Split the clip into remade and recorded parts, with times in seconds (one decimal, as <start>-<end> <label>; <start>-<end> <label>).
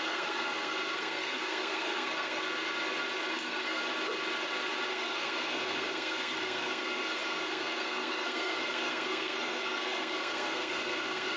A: 0.0-2.4 remade; 2.4-3.3 recorded; 3.3-3.8 remade; 3.8-4.9 recorded; 4.9-11.4 remade